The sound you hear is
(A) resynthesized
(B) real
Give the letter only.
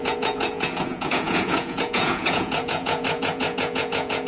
A